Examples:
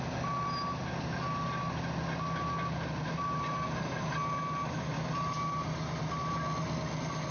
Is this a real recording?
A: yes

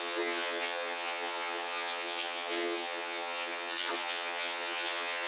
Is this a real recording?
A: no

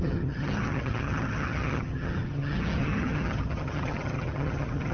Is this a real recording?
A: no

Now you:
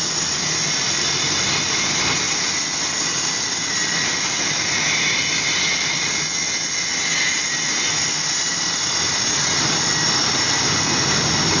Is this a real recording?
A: yes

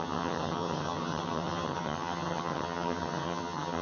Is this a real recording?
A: no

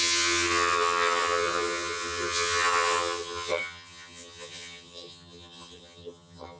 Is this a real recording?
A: no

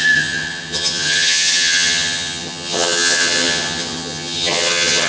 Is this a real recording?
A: no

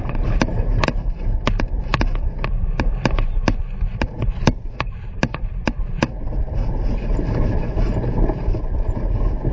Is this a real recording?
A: yes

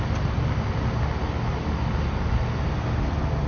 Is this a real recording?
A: yes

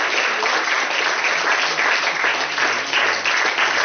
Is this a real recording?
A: yes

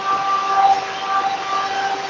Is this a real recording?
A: yes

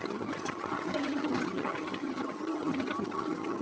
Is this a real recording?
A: no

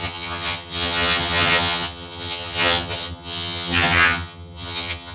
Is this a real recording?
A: no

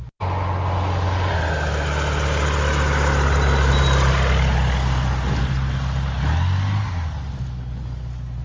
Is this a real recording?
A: yes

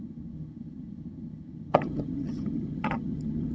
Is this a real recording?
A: no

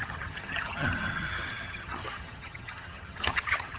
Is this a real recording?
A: no